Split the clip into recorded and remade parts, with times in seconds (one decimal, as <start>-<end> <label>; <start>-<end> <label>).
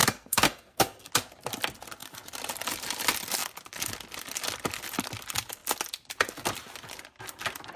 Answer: 0.0-1.1 remade; 1.1-7.8 recorded